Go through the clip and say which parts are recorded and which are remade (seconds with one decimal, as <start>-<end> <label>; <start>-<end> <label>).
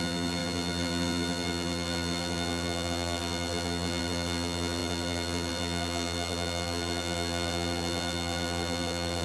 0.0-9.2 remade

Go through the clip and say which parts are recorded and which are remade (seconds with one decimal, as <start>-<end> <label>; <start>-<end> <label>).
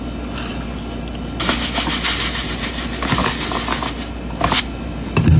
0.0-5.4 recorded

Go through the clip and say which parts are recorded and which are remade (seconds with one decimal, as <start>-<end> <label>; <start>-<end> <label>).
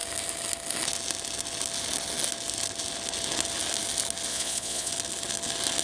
0.0-4.3 recorded; 4.3-4.9 remade; 4.9-5.8 recorded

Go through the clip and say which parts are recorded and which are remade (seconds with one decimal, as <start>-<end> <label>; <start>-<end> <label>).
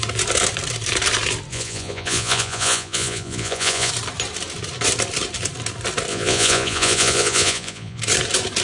0.0-1.5 recorded; 1.5-3.9 remade; 3.9-6.1 recorded; 6.1-8.0 remade; 8.0-8.6 recorded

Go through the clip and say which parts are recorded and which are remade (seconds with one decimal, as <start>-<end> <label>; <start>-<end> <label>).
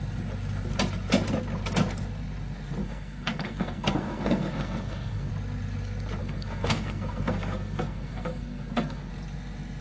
0.0-2.8 recorded; 2.8-5.3 remade; 5.3-6.2 recorded; 6.2-9.1 remade; 9.1-9.8 recorded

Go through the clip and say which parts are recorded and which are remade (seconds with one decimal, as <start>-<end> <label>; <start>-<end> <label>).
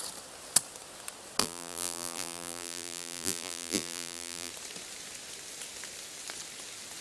0.0-1.4 recorded; 1.4-4.5 remade; 4.5-7.0 recorded